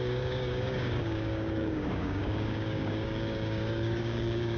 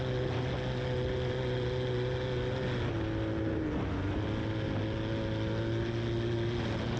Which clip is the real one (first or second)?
second